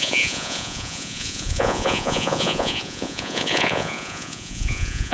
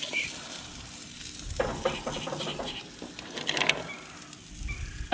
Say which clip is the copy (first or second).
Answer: first